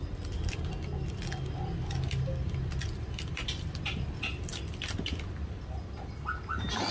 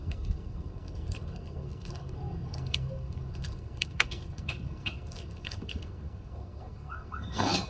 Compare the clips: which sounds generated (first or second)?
second